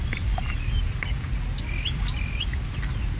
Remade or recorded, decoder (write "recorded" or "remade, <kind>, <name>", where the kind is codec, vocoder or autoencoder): recorded